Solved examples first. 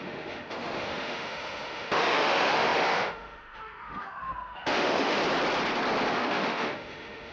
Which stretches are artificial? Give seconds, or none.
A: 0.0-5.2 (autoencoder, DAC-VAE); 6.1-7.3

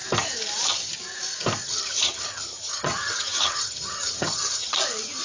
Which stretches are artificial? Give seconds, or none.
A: 1.6-4.7 (vocoder, HiFi-GAN)

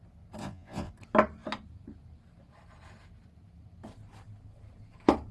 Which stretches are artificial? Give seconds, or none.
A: 0.4-0.9 (vocoder, Vocos)

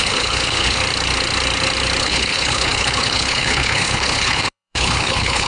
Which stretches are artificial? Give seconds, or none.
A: 0.0-0.8 (codec, HILCodec); 2.0-5.5

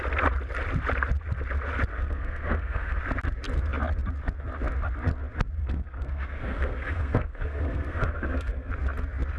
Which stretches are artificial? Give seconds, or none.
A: 1.9-3.0 (codec, SNAC); 5.6-8.7

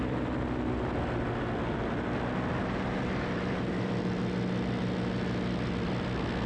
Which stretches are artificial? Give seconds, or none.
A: 2.6-3.9 (vocoder, BigVGAN v2)

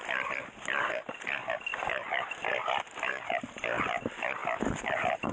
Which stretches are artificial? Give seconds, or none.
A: none

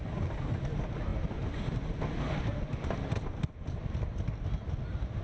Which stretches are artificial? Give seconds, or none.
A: none